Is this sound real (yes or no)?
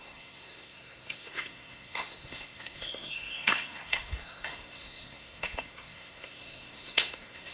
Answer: no